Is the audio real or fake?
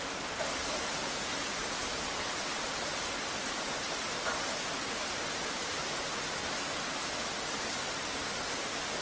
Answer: real